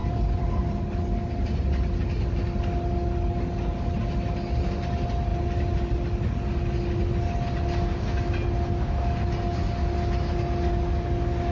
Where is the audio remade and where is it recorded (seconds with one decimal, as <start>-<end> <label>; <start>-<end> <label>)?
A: 0.0-1.0 remade; 1.0-11.5 recorded